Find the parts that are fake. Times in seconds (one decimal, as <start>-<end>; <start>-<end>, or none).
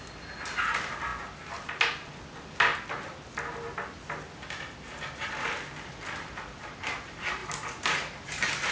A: none